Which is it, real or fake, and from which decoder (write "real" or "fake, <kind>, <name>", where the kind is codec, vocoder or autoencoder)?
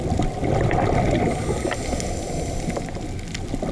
real